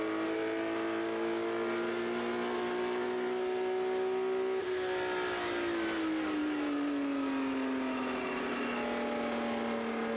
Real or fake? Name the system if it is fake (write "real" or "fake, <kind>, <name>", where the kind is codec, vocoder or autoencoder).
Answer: real